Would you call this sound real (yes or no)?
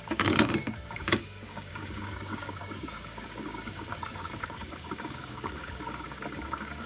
no